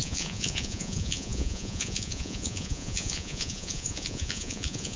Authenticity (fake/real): fake